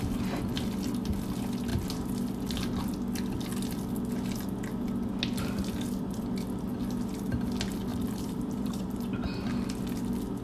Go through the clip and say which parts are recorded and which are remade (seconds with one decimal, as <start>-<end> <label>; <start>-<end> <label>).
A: 0.0-7.9 recorded; 7.9-9.3 remade; 9.3-10.4 recorded